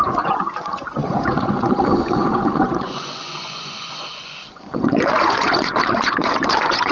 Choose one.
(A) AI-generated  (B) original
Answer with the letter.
A